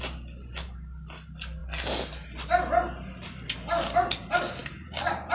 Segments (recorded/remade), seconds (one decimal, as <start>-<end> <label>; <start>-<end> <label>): 0.0-5.3 recorded